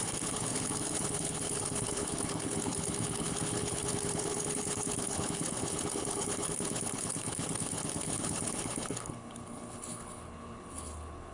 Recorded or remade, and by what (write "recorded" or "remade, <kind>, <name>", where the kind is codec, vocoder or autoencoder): remade, codec, HILCodec